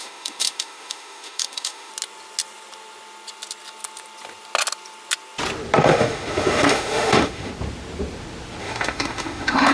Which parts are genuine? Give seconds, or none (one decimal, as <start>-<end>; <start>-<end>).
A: 1.9-5.8; 7.5-8.6